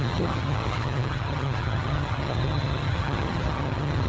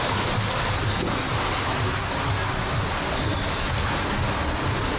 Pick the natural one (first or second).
second